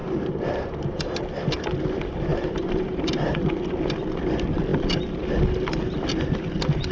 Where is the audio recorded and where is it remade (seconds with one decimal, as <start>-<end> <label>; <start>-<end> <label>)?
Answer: 0.0-1.2 remade; 1.2-2.3 recorded; 2.3-3.7 remade; 3.7-6.9 recorded